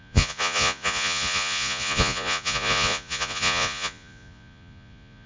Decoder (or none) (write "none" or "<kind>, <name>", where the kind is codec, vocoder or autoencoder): vocoder, Vocos